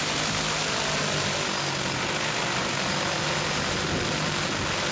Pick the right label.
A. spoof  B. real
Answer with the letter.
B